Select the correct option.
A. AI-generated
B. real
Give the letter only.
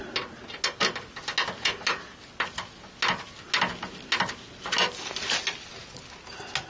B